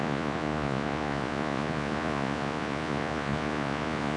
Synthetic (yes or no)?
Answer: yes